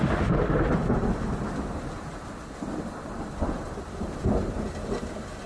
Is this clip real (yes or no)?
yes